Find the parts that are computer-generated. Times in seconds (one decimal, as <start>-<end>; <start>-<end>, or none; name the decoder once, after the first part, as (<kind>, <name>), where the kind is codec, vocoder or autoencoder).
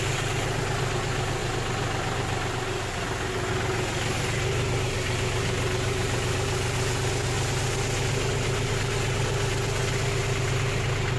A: none